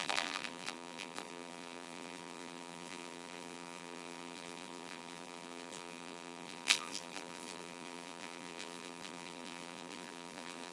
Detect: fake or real fake